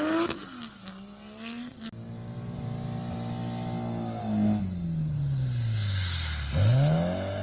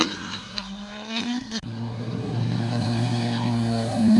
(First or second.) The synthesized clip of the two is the second